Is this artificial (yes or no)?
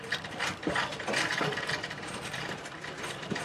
yes